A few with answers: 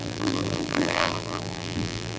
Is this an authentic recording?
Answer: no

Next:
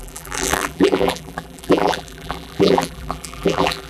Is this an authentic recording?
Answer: no